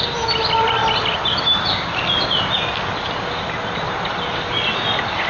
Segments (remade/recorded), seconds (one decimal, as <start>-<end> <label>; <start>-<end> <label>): 0.0-5.3 recorded